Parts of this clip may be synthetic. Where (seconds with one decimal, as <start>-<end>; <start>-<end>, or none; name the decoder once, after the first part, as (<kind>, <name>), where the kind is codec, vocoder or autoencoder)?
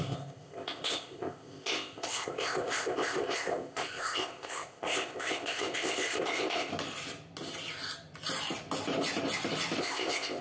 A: 0.0-6.7 (codec, ZipCodec); 9.8-10.4